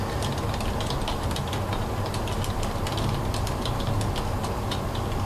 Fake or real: real